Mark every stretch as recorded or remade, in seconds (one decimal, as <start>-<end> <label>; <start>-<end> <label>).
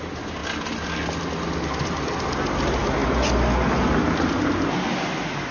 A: 0.0-5.5 recorded